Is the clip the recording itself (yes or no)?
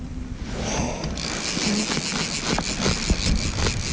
yes